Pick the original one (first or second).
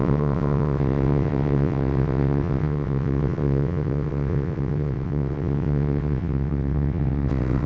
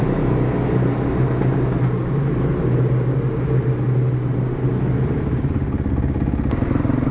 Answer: second